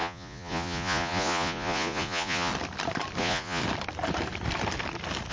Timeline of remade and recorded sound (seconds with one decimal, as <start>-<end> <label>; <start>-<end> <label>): 0.0-2.5 remade; 2.5-3.2 recorded; 3.2-3.6 remade; 3.6-5.3 recorded